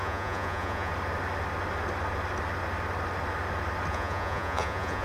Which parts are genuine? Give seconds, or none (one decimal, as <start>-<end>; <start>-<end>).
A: 0.9-3.9